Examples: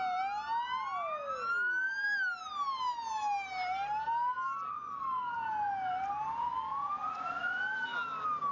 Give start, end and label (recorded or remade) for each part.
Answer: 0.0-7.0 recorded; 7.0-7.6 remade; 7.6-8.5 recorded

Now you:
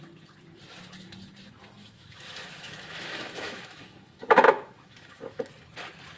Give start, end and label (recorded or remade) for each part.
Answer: 0.0-1.8 recorded; 1.8-5.5 remade; 5.5-6.2 recorded